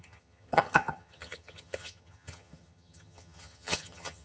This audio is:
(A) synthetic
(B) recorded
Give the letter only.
A